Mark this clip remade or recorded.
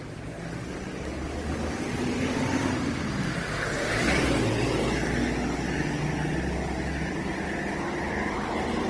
recorded